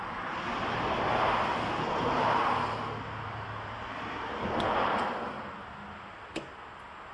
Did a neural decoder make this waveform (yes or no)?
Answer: no